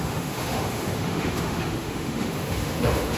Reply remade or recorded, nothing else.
remade